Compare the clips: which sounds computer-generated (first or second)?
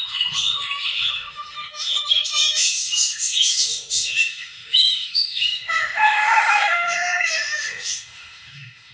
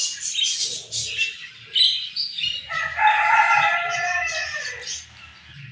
first